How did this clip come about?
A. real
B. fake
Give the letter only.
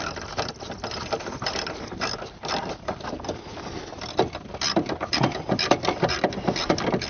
A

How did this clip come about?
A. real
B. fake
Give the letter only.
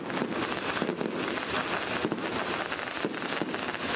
A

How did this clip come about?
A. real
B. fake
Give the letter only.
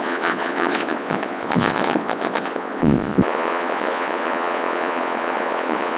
B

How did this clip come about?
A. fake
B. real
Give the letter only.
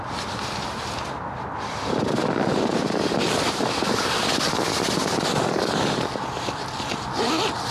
B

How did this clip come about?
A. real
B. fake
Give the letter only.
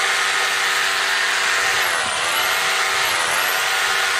A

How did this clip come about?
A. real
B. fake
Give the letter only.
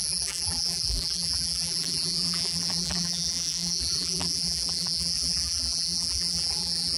B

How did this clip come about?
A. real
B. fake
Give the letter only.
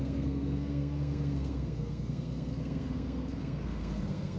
B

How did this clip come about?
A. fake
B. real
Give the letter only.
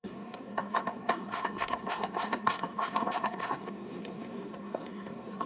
A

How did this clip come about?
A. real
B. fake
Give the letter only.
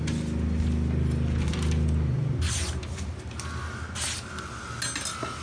A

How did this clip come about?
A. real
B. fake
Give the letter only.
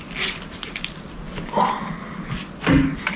A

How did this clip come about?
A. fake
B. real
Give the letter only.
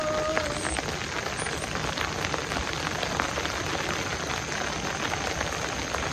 B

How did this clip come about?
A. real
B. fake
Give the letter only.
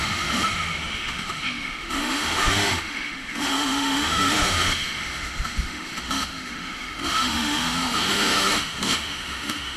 B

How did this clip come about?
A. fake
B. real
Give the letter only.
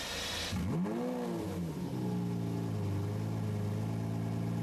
B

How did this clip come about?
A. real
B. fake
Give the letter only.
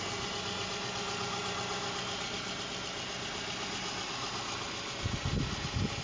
A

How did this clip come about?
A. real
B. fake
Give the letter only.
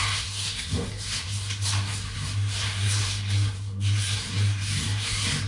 B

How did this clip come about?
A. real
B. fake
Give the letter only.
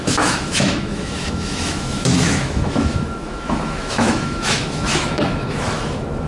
B